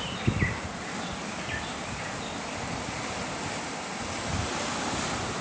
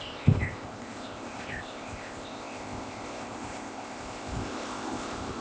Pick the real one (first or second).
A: first